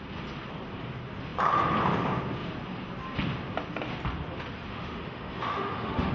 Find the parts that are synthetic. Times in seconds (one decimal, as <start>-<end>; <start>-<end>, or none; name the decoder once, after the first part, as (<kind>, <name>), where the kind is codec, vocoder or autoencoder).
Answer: 4.7-6.1 (autoencoder, DAC-VAE)